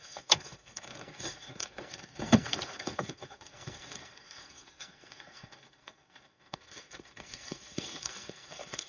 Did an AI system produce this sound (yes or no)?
yes